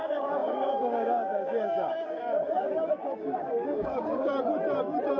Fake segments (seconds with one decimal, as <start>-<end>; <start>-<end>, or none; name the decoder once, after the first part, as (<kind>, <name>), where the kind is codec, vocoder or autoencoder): 0.0-4.3 (codec, DAC)

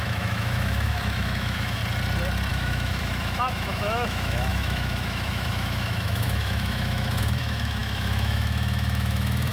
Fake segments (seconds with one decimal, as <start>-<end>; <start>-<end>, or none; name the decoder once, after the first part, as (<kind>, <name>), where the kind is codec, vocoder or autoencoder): 0.0-1.8 (autoencoder, DAC-VAE); 2.5-9.5

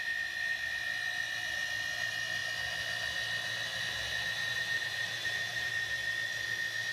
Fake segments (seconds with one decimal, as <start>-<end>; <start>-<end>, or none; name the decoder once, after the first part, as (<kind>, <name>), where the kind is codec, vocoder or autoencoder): 4.4-5.7 (vocoder, BigVGAN v2)

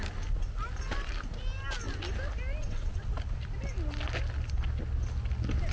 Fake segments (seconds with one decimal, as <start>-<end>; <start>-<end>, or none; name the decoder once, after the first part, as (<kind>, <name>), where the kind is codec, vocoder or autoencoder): 2.6-3.1 (vocoder, WaveNeXt)